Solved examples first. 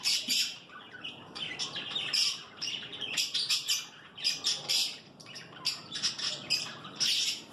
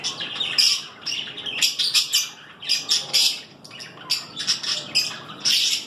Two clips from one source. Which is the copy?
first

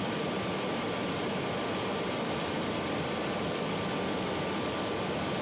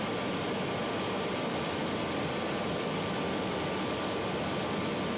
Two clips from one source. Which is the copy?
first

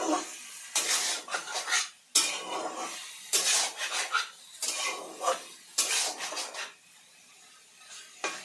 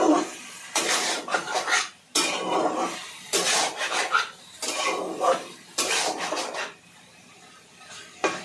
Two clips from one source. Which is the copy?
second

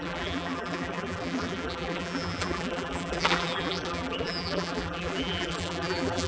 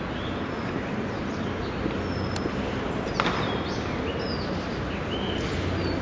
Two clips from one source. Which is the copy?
first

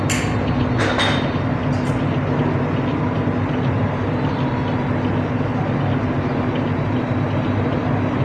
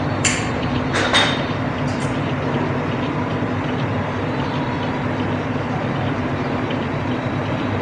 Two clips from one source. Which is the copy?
second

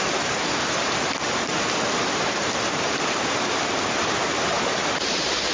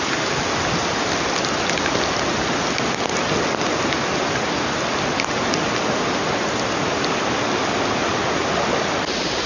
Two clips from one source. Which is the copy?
first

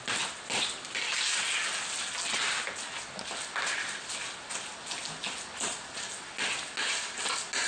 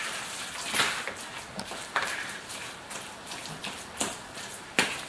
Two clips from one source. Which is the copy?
second